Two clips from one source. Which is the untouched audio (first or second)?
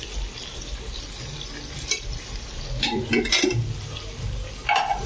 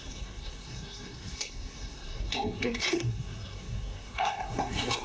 first